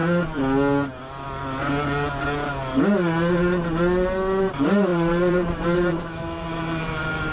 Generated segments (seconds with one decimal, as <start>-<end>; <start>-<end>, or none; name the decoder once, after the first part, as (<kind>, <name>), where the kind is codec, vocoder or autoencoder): 4.4-7.3 (vocoder, BigVGAN v2)